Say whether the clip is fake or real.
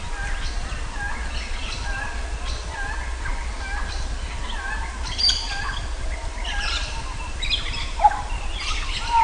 real